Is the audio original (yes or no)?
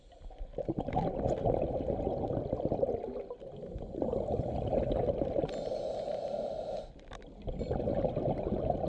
yes